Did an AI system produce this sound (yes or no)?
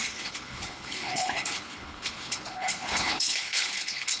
yes